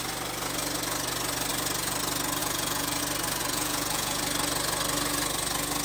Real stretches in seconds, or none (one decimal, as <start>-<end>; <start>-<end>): 0.0-2.4; 3.0-3.4; 4.2-5.8